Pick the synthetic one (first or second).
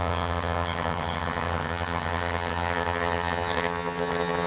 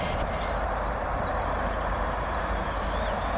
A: first